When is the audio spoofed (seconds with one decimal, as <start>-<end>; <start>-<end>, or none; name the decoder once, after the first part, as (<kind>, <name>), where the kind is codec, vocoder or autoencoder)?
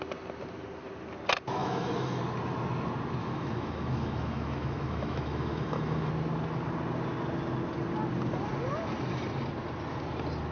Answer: 1.6-2.2 (autoencoder, DAC-VAE); 3.2-6.1